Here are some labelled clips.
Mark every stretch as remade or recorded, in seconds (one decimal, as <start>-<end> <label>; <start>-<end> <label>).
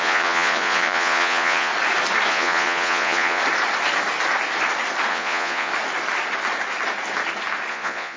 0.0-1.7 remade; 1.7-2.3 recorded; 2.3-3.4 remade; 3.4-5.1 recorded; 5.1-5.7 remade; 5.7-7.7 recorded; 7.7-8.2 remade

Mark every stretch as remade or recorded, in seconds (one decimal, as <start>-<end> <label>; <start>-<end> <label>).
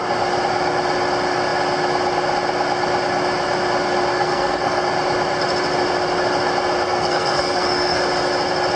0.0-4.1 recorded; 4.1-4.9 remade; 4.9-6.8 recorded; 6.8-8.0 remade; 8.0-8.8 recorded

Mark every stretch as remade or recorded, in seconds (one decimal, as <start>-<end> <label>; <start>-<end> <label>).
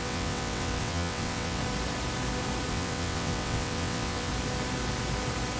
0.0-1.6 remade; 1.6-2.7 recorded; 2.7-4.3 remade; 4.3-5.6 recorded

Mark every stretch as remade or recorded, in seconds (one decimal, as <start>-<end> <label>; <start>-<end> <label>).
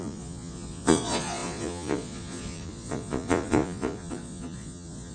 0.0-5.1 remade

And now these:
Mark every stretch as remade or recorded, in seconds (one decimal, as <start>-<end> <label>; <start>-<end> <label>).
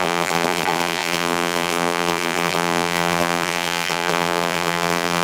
0.0-5.2 remade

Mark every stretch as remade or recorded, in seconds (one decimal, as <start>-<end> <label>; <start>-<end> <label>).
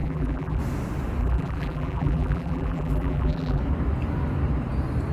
0.0-0.6 remade; 0.6-1.2 recorded; 1.2-3.6 remade; 3.6-5.1 recorded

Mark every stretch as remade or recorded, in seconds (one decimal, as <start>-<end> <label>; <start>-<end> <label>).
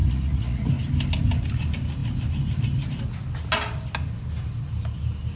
0.0-0.7 remade; 0.7-5.4 recorded